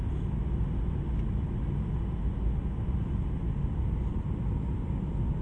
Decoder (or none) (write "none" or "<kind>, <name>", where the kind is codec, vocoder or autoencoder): none